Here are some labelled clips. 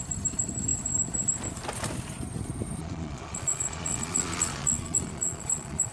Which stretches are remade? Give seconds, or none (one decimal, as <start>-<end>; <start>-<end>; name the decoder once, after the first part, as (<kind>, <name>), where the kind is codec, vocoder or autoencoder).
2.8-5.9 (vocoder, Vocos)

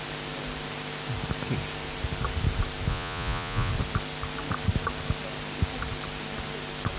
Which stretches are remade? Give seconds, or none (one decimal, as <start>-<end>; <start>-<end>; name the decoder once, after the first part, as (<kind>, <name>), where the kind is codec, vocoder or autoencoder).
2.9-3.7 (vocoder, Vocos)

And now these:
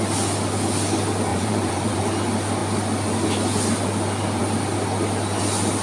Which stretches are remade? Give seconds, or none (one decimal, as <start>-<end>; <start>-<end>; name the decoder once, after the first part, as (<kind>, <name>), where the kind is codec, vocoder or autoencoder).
1.3-2.0 (vocoder, Vocos)

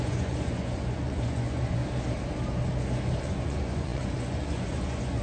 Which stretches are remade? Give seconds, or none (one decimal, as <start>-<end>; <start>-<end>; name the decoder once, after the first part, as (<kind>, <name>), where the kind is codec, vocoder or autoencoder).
0.0-1.8 (vocoder, Vocos); 3.2-5.2